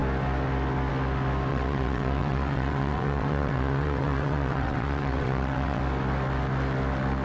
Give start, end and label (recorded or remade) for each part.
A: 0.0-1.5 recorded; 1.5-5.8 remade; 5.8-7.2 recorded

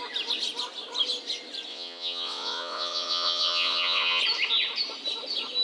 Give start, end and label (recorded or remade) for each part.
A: 0.0-1.7 recorded; 1.7-4.2 remade; 4.2-5.6 recorded

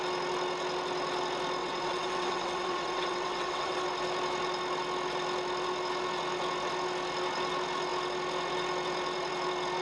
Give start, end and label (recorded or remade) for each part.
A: 0.0-1.6 recorded; 1.6-3.8 remade; 3.8-9.8 recorded

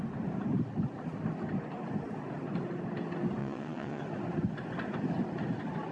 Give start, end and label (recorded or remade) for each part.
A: 0.0-3.4 recorded; 3.4-4.0 remade; 4.0-5.9 recorded

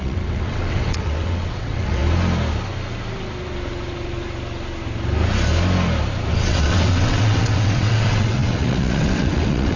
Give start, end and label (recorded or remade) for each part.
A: 0.0-2.0 remade; 2.0-6.3 recorded; 6.3-9.8 remade

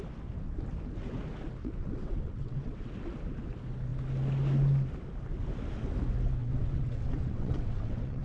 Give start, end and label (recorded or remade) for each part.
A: 0.0-1.6 recorded; 1.6-2.9 remade; 2.9-6.4 recorded; 6.4-8.2 remade

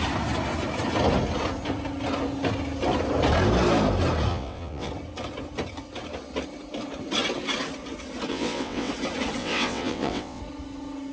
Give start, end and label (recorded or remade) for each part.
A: 0.0-4.3 recorded; 4.3-4.9 remade; 4.9-8.3 recorded; 8.3-8.9 remade; 8.9-9.4 recorded; 9.4-10.4 remade; 10.4-11.1 recorded

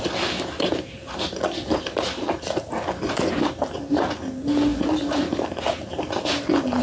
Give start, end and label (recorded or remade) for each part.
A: 0.0-6.8 recorded